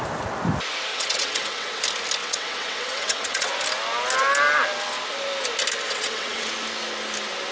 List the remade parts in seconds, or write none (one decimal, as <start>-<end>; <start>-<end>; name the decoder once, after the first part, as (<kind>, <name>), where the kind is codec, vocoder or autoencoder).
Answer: 0.9-1.8 (vocoder, WaveNeXt); 2.2-3.5; 5.9-6.5